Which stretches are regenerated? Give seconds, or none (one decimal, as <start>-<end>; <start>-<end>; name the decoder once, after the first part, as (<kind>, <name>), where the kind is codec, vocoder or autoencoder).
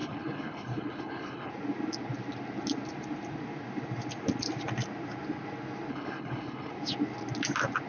0.0-1.5 (codec, HILCodec); 5.9-6.7